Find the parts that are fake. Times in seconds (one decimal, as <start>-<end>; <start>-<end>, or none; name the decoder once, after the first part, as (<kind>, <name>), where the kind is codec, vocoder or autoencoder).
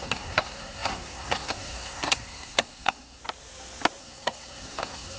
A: 0.0-3.2 (codec, SNAC); 4.0-5.2